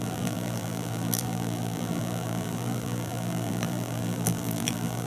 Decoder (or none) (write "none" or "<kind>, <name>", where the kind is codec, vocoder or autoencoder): vocoder, BigVGAN v2